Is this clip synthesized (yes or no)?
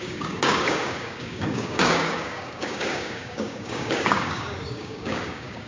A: yes